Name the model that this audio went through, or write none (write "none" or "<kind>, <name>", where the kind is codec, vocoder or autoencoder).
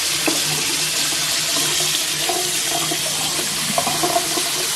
none